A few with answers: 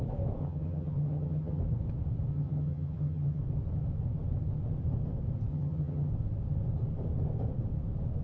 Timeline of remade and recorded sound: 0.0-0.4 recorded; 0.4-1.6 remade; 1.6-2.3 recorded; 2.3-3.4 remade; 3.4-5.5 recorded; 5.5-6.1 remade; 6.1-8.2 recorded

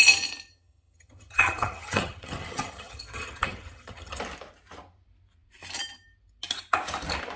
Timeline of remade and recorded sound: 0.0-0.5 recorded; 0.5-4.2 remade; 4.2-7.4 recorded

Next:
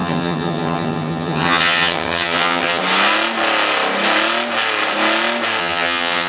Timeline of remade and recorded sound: 0.0-2.8 remade; 2.8-5.6 recorded; 5.6-6.3 remade

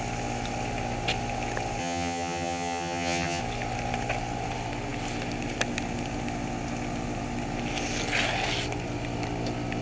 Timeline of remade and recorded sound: 0.0-1.8 recorded; 1.8-3.4 remade; 3.4-9.8 recorded

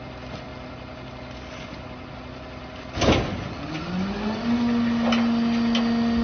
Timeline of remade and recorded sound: 0.0-6.2 recorded

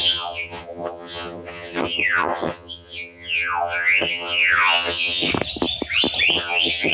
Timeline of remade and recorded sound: 0.0-5.3 remade; 5.3-6.3 recorded; 6.3-6.9 remade

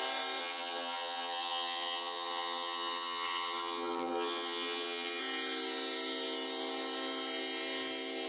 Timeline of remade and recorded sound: 0.0-0.4 recorded; 0.4-5.2 remade; 5.2-8.3 recorded